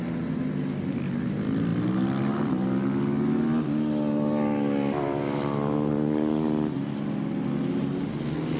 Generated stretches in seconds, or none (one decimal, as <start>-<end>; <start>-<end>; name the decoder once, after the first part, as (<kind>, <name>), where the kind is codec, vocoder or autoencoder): none